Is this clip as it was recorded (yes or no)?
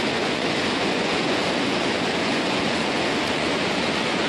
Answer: no